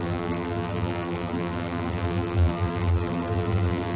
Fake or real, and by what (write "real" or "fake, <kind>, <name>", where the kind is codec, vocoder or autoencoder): fake, vocoder, BigVGAN v2